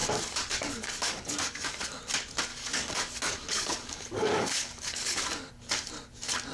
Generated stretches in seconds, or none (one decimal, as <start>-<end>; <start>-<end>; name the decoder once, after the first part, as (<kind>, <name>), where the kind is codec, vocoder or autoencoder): 0.0-2.0 (codec, DAC); 2.5-5.5